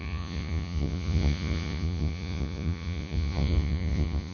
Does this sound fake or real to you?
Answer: fake